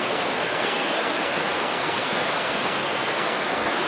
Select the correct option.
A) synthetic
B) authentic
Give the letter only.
A